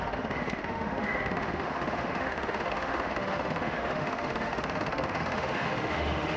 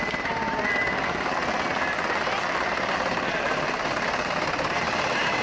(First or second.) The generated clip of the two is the first